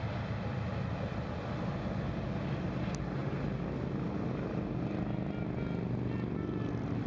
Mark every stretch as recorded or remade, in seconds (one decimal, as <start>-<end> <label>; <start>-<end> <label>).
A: 0.0-7.1 recorded